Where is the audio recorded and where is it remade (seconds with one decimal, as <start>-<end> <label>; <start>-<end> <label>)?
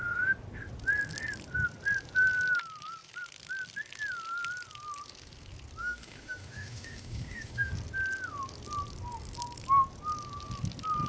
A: 0.0-5.8 recorded; 5.8-7.7 remade; 7.7-11.1 recorded